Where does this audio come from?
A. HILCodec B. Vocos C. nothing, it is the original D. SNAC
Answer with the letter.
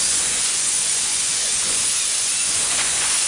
B